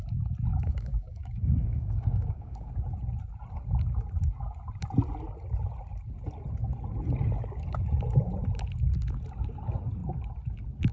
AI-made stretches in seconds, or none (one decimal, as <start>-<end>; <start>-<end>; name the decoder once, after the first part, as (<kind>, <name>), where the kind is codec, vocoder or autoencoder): 0.5-2.7 (codec, DAC)